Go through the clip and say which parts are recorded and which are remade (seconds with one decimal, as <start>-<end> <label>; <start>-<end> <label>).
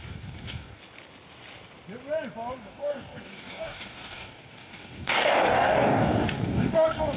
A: 0.0-0.8 remade; 0.8-2.6 recorded; 2.6-7.2 remade